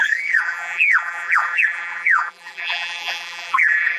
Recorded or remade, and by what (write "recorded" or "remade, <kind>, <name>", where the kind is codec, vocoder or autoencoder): remade, vocoder, BigVGAN v2